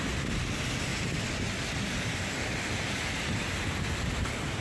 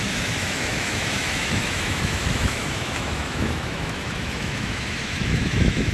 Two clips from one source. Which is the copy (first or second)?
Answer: second